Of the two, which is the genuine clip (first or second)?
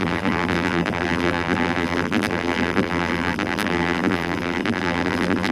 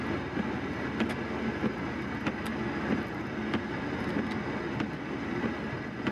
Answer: second